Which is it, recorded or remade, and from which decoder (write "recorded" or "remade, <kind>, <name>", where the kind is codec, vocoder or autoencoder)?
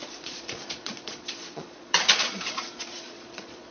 remade, vocoder, Vocos